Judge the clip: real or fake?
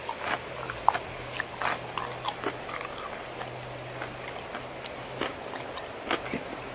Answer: real